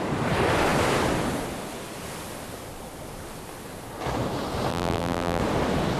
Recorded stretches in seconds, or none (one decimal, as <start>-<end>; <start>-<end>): 0.0-4.7; 5.4-6.0